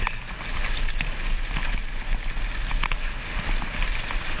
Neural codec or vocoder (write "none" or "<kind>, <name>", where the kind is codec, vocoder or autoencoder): none